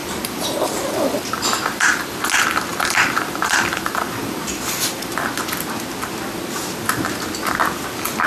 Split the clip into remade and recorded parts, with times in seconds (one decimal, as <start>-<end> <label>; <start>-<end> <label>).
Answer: 0.0-2.2 remade; 2.2-2.7 recorded; 2.7-5.1 remade; 5.1-8.3 recorded